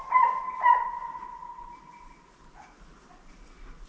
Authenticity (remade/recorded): recorded